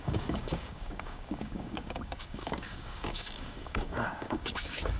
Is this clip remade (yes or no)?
yes